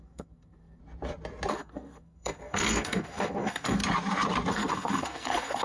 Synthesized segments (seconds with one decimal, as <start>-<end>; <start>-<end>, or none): 0.0-0.8; 1.5-3.8; 4.5-5.6